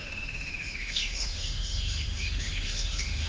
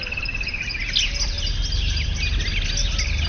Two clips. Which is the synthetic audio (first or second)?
first